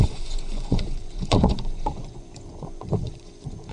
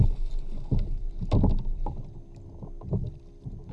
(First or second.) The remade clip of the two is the first